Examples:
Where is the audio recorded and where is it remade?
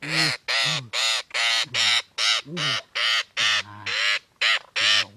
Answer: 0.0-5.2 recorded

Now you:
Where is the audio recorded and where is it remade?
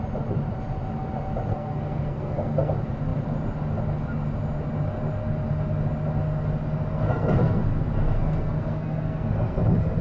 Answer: 0.0-1.5 recorded; 1.5-2.7 remade; 2.7-6.9 recorded; 6.9-9.6 remade; 9.6-10.0 recorded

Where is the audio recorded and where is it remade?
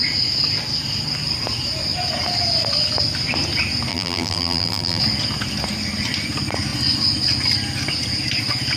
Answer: 0.0-3.9 recorded; 3.9-5.0 remade; 5.0-8.8 recorded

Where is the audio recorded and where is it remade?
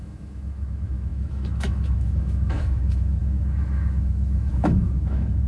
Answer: 0.0-5.5 remade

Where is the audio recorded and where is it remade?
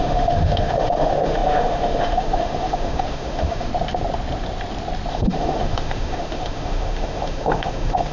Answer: 0.0-3.7 remade; 3.7-5.1 recorded; 5.1-8.1 remade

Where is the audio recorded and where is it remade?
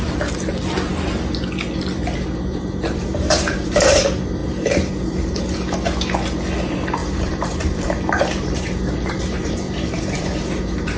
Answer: 0.0-2.5 recorded; 2.5-4.0 remade; 4.0-4.4 recorded; 4.4-5.4 remade; 5.4-7.0 recorded; 7.0-11.0 remade